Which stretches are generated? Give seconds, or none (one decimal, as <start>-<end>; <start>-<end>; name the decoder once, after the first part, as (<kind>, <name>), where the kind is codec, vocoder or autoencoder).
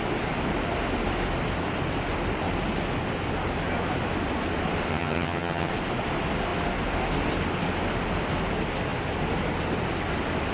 4.9-5.7 (vocoder, HiFi-GAN)